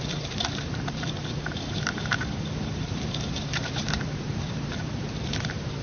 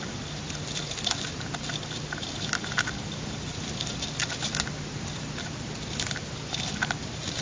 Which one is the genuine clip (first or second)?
second